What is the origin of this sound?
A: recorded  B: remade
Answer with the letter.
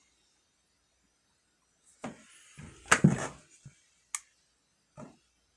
A